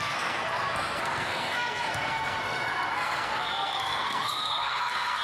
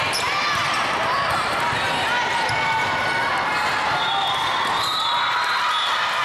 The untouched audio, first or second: second